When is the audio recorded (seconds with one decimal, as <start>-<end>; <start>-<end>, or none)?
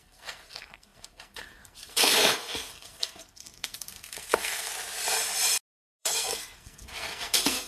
4.7-6.0